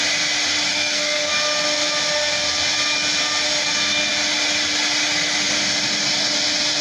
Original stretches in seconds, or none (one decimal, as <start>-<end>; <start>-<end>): 0.0-0.7; 1.3-6.8